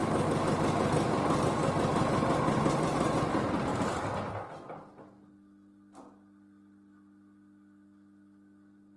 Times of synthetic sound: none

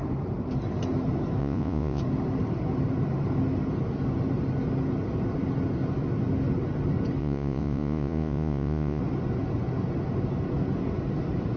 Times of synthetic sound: 1.4-2.0 (vocoder, Vocos); 7.2-9.0

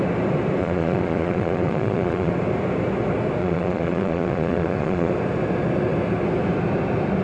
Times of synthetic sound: 0.6-2.3 (vocoder, Vocos); 3.4-5.1

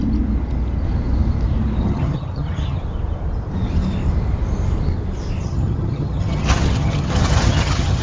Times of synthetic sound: 1.8-2.8 (vocoder, HiFi-GAN); 5.4-8.0

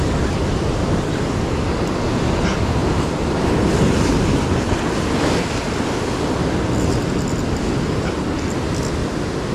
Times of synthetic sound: none